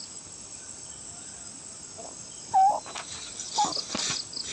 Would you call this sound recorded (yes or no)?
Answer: yes